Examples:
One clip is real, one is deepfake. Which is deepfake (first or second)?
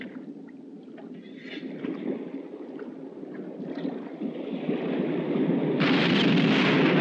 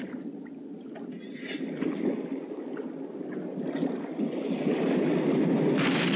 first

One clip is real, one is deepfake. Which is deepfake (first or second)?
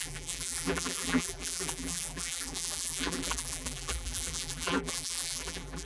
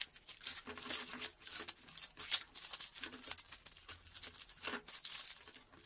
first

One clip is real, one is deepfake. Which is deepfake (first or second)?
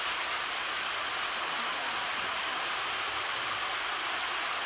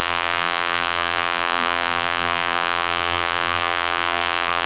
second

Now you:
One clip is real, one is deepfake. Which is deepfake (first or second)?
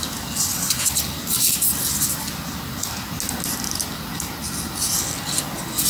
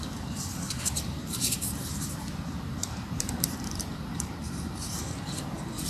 second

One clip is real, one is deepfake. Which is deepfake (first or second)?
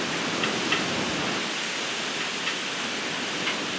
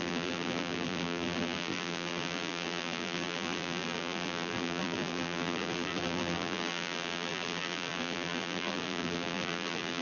second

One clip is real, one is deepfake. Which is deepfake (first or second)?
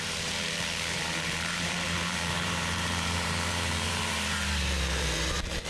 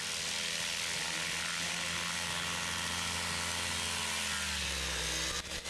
first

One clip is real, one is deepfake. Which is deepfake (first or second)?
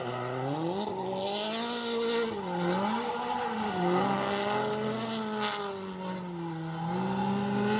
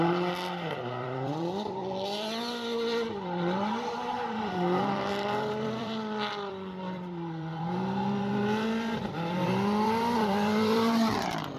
second